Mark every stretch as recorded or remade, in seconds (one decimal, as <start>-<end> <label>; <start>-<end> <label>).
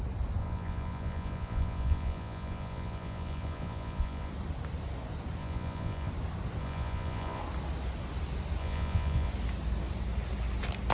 0.0-0.4 recorded; 0.4-4.3 remade; 4.3-5.4 recorded; 5.4-6.1 remade; 6.1-6.6 recorded; 6.6-7.4 remade; 7.4-8.6 recorded; 8.6-9.3 remade; 9.3-10.9 recorded